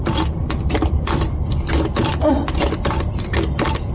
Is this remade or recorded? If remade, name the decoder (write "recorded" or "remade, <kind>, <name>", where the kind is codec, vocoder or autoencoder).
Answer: recorded